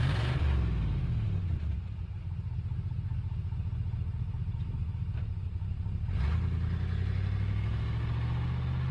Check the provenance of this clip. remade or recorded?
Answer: recorded